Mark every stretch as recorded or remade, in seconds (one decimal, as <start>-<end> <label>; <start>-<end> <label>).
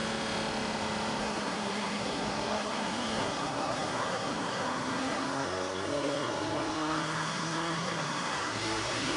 0.0-1.2 recorded; 1.2-9.2 remade